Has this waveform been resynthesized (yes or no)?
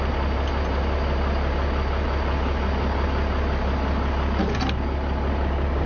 no